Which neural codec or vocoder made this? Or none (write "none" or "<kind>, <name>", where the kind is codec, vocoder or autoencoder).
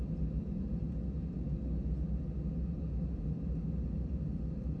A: none